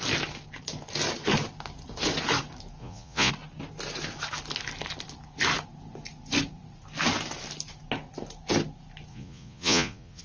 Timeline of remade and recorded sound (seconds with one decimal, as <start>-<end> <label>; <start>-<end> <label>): 0.0-2.8 recorded; 2.8-3.3 remade; 3.3-9.1 recorded; 9.1-10.2 remade